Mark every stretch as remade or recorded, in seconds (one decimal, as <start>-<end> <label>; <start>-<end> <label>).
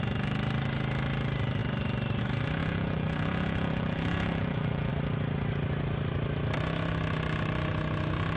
0.0-2.6 recorded; 2.6-4.9 remade; 4.9-8.4 recorded